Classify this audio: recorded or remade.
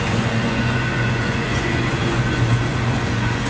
remade